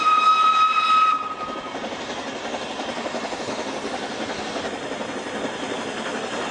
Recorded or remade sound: recorded